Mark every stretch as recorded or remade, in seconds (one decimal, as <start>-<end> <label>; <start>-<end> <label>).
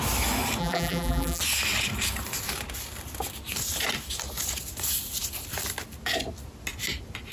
0.0-0.6 recorded; 0.6-1.4 remade; 1.4-7.3 recorded